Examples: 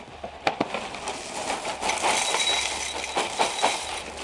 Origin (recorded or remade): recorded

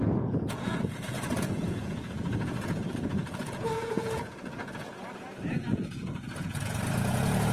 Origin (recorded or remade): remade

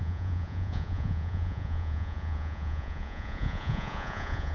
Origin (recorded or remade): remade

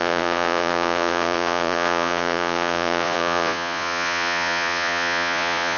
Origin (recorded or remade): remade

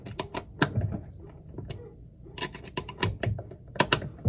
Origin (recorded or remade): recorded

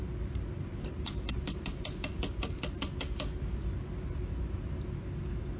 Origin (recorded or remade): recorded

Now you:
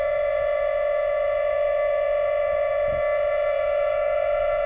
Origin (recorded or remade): remade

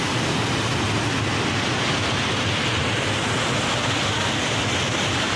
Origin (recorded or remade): recorded